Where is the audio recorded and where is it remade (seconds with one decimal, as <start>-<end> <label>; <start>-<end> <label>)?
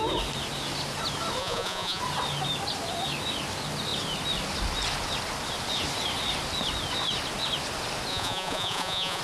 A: 0.0-1.4 recorded; 1.4-2.0 remade; 2.0-8.1 recorded; 8.1-9.2 remade